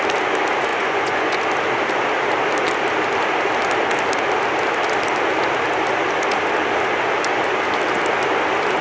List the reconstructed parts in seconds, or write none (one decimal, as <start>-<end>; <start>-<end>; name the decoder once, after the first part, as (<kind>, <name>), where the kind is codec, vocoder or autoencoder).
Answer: 0.7-1.4 (vocoder, Vocos)